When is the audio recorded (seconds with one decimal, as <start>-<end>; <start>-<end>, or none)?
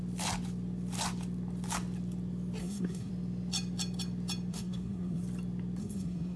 0.0-2.6; 3.1-4.5; 5.2-5.8